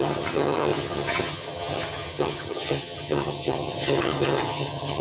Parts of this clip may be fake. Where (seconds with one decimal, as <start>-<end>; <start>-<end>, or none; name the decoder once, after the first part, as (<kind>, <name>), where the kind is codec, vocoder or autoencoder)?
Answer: 0.0-5.0 (vocoder, HiFi-GAN)

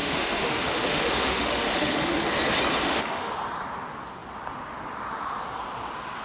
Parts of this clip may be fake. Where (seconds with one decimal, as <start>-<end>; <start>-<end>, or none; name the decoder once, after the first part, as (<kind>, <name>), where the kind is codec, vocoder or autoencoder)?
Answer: 0.0-2.3 (autoencoder, DAC-VAE); 2.8-3.3

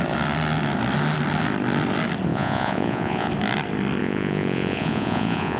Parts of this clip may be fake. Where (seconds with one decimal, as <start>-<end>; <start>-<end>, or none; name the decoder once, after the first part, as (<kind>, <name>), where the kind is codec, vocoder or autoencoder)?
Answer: 2.3-3.3 (vocoder, Vocos); 4.0-5.6

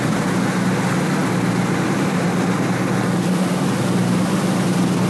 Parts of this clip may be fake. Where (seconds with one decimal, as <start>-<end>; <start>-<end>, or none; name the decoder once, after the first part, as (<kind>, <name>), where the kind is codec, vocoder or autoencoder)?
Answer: none

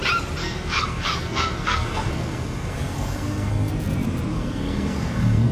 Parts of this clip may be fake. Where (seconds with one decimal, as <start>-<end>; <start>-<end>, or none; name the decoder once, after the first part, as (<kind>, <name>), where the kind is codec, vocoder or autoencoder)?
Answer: 0.4-3.7 (codec, SNAC); 4.3-5.5